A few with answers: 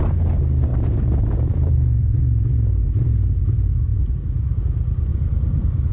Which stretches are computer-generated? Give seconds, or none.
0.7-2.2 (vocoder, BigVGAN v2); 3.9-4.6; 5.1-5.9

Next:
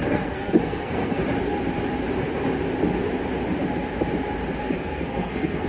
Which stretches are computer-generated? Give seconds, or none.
0.0-1.2 (codec, SNAC); 4.6-5.7

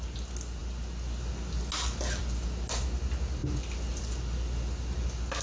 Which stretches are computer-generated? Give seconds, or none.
none

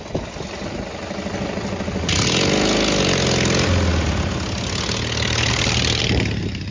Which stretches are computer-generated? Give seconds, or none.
none

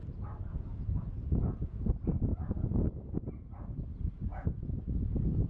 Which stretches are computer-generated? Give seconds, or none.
0.5-1.9 (vocoder, Vocos); 2.3-2.9; 4.3-5.5

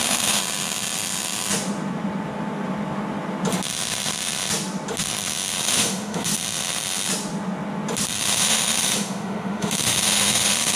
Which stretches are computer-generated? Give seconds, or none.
0.0-0.4 (autoencoder, DAC-VAE); 5.6-6.3; 8.2-10.8

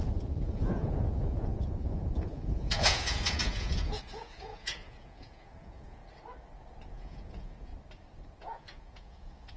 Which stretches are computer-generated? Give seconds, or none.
0.0-6.0 (vocoder, Vocos); 6.9-7.7; 8.4-9.6

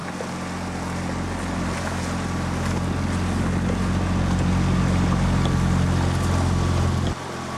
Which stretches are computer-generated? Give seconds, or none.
none